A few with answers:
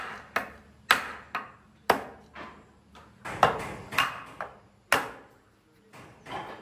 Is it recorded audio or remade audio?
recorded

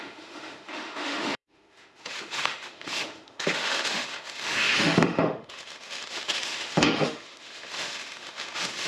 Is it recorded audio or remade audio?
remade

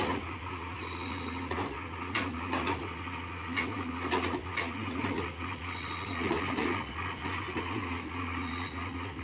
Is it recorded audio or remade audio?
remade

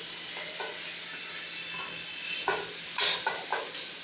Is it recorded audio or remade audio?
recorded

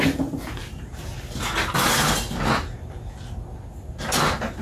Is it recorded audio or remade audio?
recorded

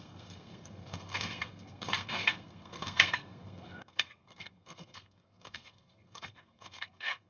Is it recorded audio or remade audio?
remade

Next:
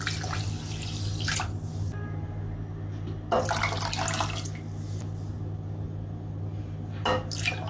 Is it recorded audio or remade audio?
recorded